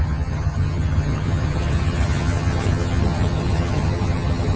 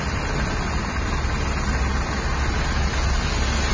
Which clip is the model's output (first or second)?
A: first